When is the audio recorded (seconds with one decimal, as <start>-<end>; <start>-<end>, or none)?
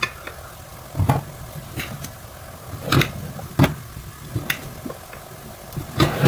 0.0-6.3